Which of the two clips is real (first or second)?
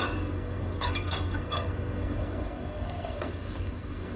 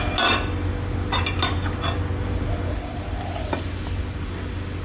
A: second